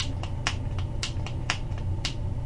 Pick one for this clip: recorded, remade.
recorded